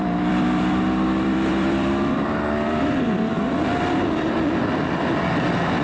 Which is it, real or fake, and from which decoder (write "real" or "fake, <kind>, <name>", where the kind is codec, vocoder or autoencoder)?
fake, vocoder, BigVGAN v2